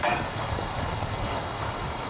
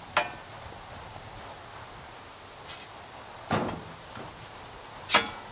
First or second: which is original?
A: second